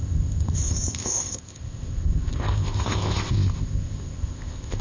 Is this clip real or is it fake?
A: fake